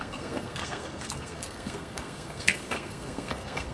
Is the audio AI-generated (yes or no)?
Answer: yes